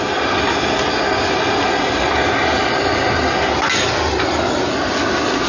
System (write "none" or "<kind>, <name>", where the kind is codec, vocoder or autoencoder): none